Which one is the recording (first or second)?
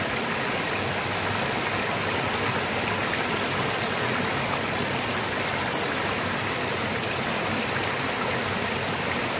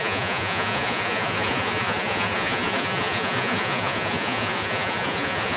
first